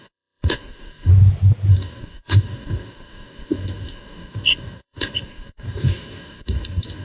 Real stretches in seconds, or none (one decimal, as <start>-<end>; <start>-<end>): 1.1-1.7